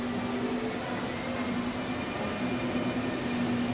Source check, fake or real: real